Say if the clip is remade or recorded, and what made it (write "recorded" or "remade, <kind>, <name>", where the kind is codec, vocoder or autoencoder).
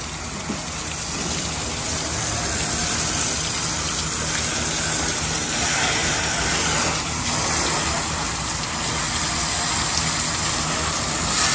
recorded